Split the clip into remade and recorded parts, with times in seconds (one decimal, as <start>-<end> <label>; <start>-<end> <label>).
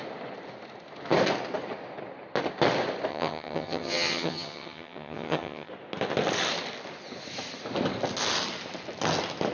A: 0.0-3.1 recorded; 3.1-5.7 remade; 5.7-9.5 recorded